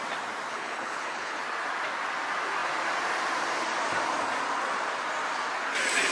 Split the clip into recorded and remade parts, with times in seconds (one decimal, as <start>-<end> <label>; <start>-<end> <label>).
0.0-0.5 recorded; 0.5-1.4 remade; 1.4-6.1 recorded